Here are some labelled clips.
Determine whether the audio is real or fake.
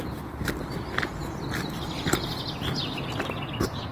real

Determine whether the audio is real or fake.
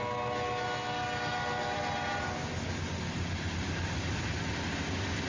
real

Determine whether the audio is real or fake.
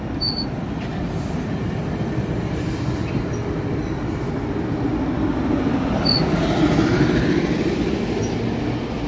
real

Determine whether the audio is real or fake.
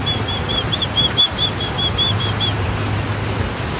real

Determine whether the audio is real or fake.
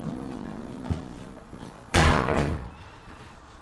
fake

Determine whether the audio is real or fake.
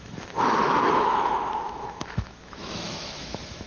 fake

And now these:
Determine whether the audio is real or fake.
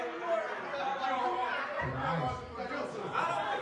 real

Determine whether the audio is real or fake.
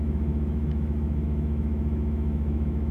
fake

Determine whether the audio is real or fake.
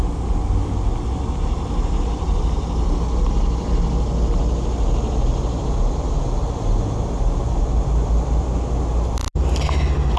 real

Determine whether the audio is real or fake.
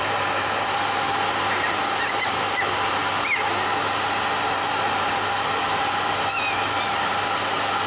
real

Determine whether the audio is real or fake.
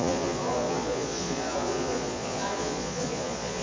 fake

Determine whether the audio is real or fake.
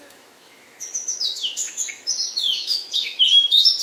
fake